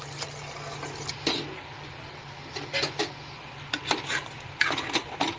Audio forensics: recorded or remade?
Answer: recorded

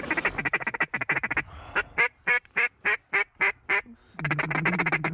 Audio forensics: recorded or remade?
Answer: recorded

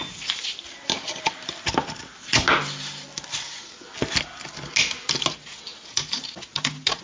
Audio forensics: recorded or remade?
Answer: recorded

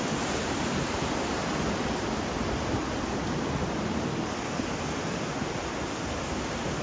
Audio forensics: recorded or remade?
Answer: recorded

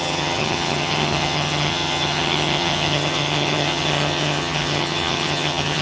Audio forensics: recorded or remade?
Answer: remade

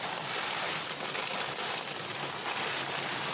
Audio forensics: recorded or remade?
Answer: recorded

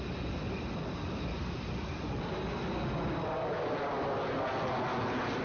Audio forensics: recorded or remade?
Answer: recorded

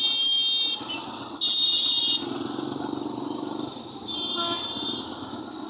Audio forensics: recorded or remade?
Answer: recorded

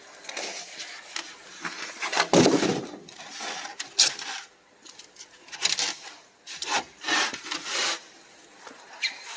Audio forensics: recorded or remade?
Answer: recorded